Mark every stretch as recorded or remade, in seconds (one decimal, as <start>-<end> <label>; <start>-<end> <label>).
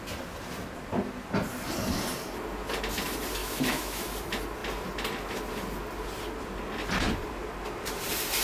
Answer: 0.0-3.4 recorded; 3.4-4.1 remade; 4.1-8.4 recorded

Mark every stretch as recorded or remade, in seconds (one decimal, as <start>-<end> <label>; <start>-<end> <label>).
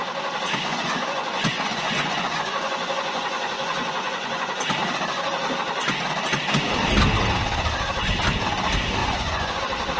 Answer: 0.0-0.7 recorded; 0.7-4.5 remade; 4.5-9.0 recorded; 9.0-9.6 remade; 9.6-10.0 recorded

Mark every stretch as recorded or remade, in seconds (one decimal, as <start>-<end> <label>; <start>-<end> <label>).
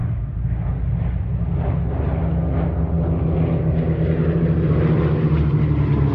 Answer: 0.0-6.1 recorded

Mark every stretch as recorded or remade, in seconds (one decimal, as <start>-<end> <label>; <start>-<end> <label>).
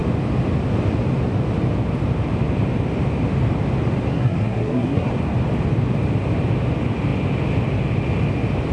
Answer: 0.0-4.1 recorded; 4.1-5.1 remade; 5.1-8.7 recorded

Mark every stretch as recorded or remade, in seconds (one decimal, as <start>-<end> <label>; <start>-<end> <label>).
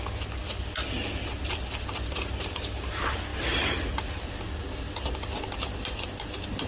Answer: 0.0-6.7 recorded